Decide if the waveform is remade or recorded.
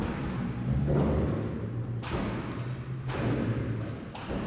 recorded